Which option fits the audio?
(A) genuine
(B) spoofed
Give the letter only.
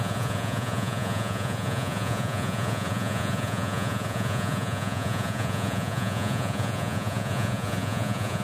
B